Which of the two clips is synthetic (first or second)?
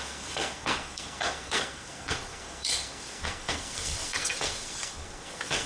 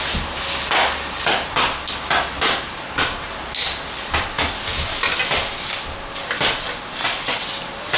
first